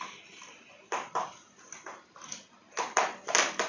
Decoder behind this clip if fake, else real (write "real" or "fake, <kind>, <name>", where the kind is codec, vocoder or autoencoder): real